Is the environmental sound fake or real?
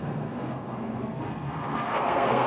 fake